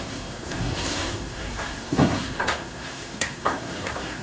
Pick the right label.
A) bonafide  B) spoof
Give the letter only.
B